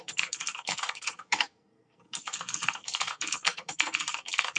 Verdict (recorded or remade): remade